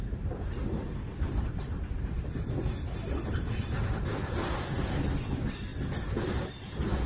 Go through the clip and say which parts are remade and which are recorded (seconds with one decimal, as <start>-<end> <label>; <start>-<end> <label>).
0.0-7.1 recorded